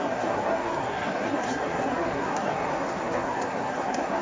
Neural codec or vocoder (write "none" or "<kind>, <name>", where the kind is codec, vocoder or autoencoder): codec, SNAC